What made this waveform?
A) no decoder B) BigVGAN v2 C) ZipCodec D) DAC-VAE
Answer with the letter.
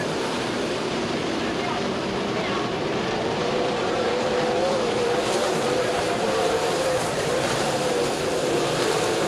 B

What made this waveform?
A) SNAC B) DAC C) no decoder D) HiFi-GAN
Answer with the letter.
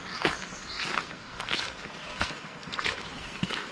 A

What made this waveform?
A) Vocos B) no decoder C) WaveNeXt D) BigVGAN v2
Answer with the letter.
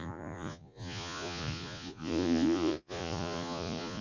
A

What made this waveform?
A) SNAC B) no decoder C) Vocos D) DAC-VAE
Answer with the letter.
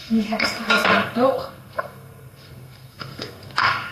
A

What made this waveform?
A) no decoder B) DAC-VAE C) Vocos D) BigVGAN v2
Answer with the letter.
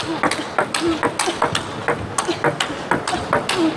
A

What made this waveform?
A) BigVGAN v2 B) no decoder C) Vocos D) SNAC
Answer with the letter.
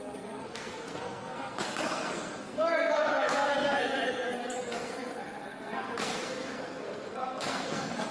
D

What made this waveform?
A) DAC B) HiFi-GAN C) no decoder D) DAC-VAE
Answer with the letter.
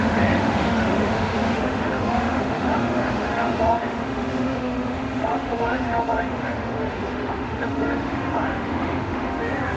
D